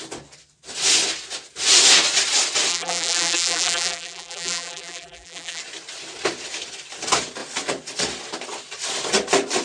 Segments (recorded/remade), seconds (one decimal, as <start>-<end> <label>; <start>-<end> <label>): 0.0-2.7 recorded; 2.7-5.6 remade; 5.6-9.6 recorded